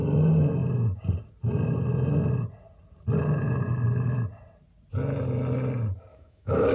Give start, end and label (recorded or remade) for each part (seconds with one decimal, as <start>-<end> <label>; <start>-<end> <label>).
0.0-6.1 recorded; 6.1-6.7 remade

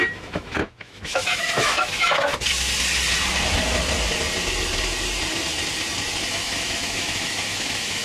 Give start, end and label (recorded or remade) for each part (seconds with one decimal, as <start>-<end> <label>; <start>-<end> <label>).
0.0-2.3 remade; 2.3-6.3 recorded; 6.3-8.0 remade

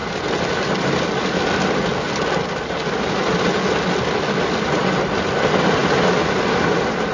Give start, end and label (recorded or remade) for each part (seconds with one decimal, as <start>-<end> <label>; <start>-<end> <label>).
0.0-7.1 recorded

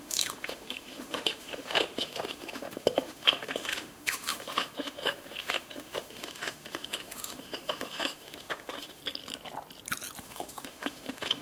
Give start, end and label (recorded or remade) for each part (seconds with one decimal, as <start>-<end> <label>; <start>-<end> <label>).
0.0-9.0 remade; 9.0-10.2 recorded; 10.2-11.4 remade

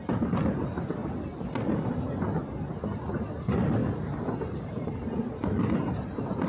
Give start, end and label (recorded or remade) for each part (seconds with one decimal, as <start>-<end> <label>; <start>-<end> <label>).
0.0-6.5 recorded

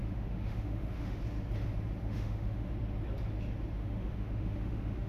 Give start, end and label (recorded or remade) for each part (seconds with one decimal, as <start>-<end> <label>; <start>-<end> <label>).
0.0-1.2 remade; 1.2-2.0 recorded; 2.0-2.7 remade; 2.7-3.8 recorded; 3.8-5.1 remade

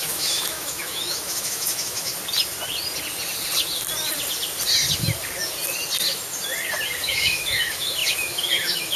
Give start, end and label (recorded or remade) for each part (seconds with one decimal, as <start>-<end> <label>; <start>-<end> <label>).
0.0-2.1 remade; 2.1-7.0 recorded; 7.0-9.0 remade